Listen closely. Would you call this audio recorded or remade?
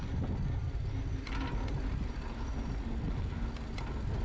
recorded